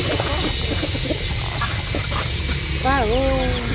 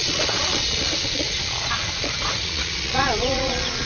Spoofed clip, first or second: second